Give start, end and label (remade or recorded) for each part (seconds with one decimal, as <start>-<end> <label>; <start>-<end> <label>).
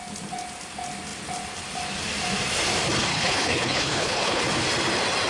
0.0-3.1 recorded; 3.1-4.4 remade; 4.4-5.3 recorded